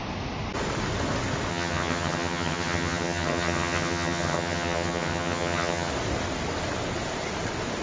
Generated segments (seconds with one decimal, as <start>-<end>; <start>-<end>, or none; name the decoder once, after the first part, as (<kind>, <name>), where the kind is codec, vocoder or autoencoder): 1.5-5.9 (vocoder, HiFi-GAN)